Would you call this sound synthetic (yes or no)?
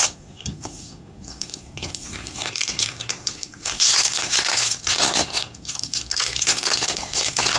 yes